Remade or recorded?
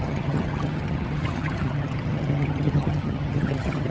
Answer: remade